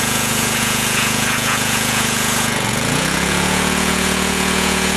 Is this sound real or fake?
fake